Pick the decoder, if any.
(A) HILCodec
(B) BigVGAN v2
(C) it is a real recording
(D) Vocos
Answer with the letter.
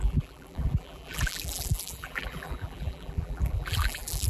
B